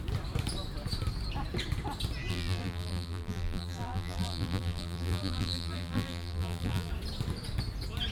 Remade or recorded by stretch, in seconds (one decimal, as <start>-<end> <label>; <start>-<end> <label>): 0.0-2.3 recorded; 2.3-6.9 remade; 6.9-8.1 recorded